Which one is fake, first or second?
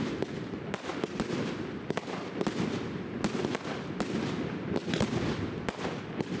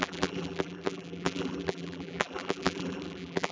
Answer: second